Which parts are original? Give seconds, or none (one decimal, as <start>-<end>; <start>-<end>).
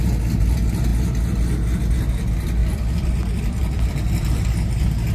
0.0-2.6; 3.9-5.1